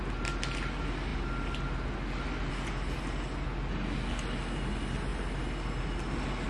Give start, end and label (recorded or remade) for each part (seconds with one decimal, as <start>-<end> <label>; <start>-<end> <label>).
0.0-6.5 recorded